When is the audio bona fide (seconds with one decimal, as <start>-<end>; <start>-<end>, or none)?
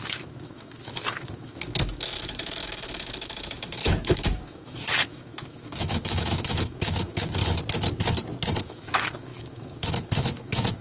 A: 7.4-8.6